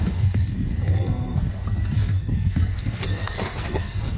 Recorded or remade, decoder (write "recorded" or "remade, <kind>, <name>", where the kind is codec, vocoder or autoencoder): remade, codec, SNAC